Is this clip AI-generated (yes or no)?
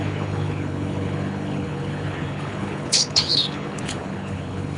yes